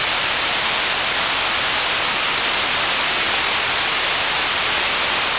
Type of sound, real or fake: real